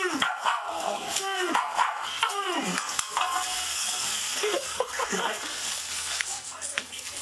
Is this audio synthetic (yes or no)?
yes